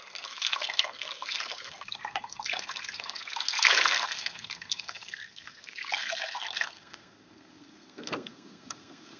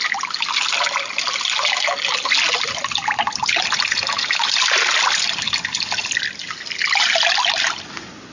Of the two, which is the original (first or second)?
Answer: second